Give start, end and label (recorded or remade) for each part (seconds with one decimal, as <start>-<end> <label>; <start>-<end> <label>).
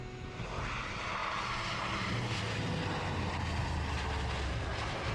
0.0-1.2 recorded; 1.2-2.4 remade; 2.4-5.1 recorded